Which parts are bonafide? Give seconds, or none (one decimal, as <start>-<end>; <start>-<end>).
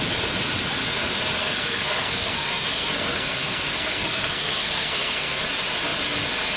0.0-1.4; 5.4-6.6